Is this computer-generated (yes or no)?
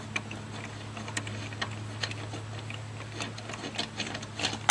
no